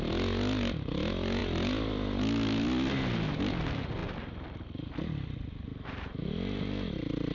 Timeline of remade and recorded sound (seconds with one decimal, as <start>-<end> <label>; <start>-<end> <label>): 0.0-5.7 recorded; 5.7-7.3 remade